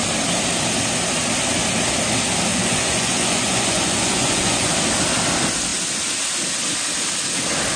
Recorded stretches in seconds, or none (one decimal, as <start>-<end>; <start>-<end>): 0.0-2.5; 4.7-7.8